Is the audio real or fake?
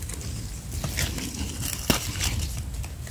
real